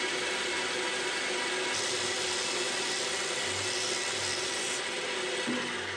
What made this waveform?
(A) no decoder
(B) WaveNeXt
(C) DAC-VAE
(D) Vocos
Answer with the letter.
A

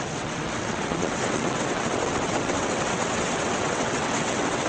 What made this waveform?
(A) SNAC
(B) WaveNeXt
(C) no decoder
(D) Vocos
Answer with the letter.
B